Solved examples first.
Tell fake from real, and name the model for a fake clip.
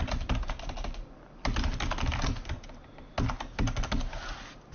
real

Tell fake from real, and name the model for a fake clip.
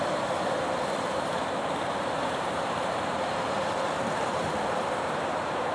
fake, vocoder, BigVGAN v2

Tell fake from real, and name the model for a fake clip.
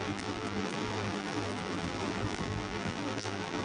fake, vocoder, BigVGAN v2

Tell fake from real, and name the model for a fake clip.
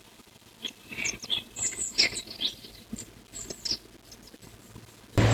real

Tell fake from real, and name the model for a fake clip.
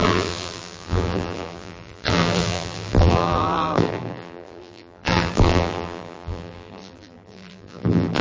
fake, vocoder, BigVGAN v2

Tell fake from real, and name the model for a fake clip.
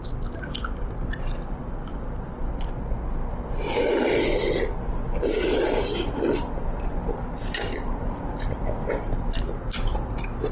real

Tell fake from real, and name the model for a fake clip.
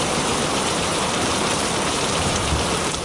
fake, vocoder, BigVGAN v2